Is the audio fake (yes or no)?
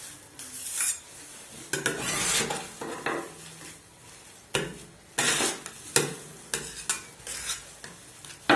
no